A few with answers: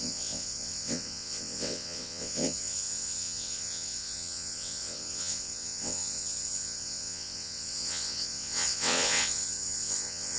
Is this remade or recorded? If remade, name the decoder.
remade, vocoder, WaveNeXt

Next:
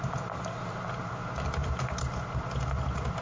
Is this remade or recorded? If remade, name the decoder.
recorded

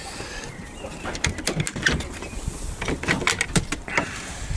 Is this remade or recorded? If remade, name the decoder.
recorded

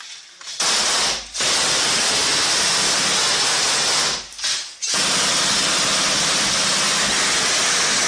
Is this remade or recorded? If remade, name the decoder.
recorded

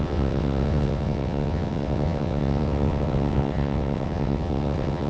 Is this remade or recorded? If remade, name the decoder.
remade, vocoder, WaveNeXt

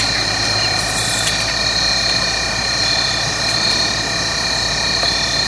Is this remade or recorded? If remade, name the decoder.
recorded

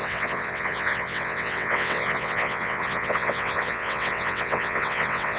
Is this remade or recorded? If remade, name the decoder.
remade, vocoder, WaveNeXt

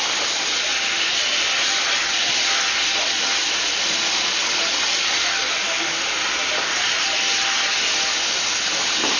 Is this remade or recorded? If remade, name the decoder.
recorded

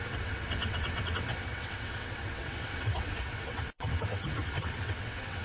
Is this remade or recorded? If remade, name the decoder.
remade, vocoder, WaveNeXt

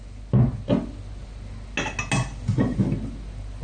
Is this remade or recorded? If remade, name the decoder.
recorded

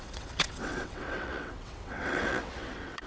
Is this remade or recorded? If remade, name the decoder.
remade, vocoder, WaveNeXt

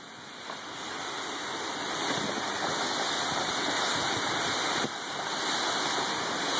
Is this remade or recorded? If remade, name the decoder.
recorded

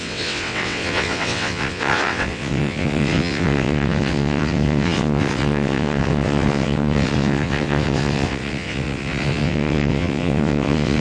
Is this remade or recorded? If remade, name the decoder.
remade, vocoder, WaveNeXt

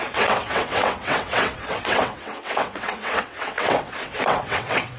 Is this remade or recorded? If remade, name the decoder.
remade, vocoder, WaveNeXt